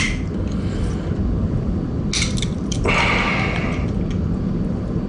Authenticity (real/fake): real